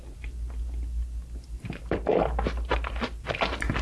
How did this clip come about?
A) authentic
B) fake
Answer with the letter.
A